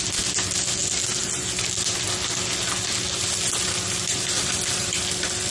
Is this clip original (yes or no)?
yes